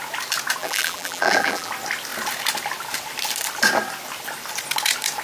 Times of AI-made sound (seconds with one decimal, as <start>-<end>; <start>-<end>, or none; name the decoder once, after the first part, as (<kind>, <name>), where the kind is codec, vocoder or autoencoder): 0.6-1.7 (vocoder, BigVGAN v2)